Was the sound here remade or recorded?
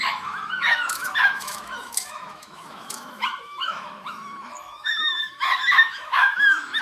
remade